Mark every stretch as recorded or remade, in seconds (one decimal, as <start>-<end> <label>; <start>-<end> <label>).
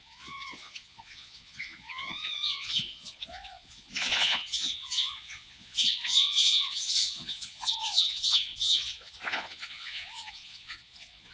0.0-11.3 remade